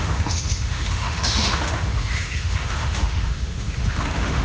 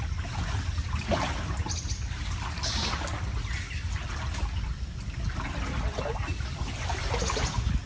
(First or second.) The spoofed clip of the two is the first